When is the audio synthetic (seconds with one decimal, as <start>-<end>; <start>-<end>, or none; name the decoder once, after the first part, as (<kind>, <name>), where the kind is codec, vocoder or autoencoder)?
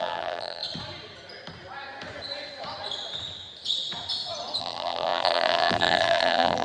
0.0-0.6 (vocoder, BigVGAN v2); 4.6-6.6